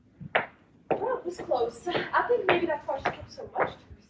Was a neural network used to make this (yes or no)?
no